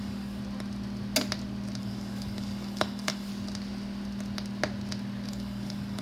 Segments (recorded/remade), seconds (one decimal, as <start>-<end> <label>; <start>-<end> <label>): 0.0-0.4 remade; 0.4-1.8 recorded; 1.8-3.3 remade; 3.3-5.3 recorded; 5.3-6.0 remade